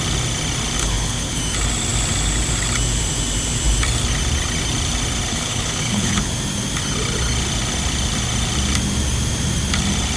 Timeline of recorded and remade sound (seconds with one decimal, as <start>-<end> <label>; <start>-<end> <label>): 0.0-0.8 recorded; 0.8-1.4 remade; 1.4-5.3 recorded; 5.3-6.3 remade; 6.3-10.2 recorded